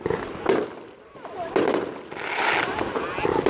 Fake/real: real